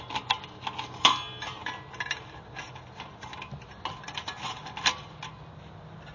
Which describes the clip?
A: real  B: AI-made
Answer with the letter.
A